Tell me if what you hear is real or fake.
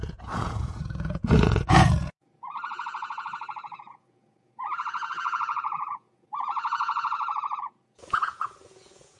fake